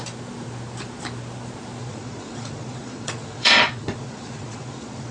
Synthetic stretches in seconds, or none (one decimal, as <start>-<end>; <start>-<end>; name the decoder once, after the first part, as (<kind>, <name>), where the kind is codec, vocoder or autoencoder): 1.8-5.1 (vocoder, Vocos)